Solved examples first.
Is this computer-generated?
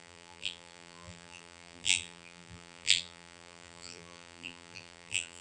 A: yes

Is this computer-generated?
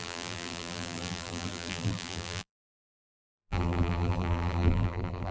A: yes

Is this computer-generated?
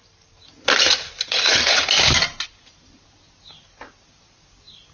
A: yes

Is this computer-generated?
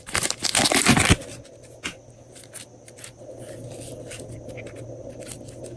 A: no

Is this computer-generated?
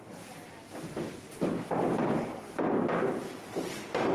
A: yes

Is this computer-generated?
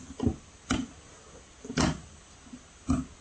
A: no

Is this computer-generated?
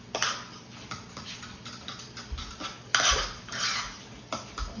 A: no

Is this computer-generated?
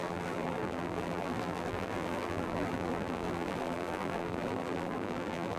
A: yes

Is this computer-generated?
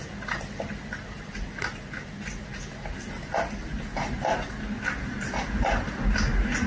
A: no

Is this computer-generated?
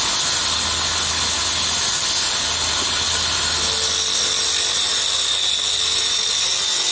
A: no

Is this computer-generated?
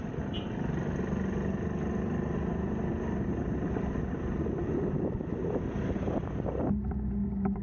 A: no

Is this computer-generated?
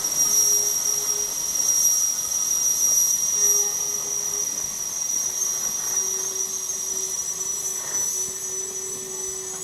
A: no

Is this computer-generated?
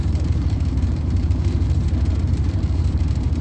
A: yes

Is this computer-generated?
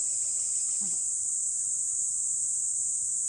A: no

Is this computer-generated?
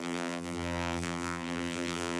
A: yes